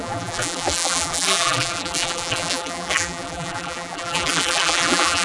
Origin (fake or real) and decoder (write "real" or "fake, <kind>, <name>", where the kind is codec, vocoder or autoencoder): fake, vocoder, BigVGAN v2